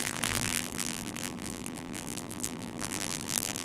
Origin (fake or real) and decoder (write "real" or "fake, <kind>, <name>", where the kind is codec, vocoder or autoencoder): fake, vocoder, BigVGAN v2